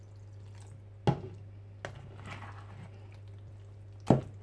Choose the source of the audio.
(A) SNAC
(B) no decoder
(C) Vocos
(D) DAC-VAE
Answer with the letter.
B